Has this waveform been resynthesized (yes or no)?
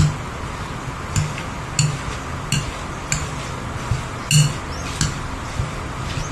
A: no